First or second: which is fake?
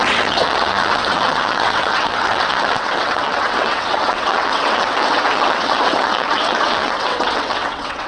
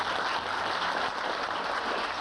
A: first